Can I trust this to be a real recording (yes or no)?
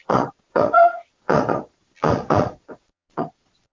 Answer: no